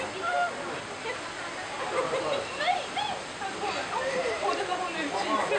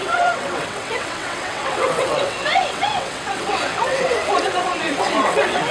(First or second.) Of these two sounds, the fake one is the second